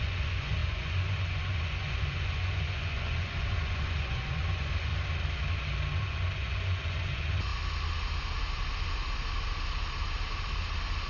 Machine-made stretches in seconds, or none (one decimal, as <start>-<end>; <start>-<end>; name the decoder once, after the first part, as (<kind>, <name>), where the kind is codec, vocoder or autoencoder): 0.0-4.9 (vocoder, Vocos); 6.0-7.5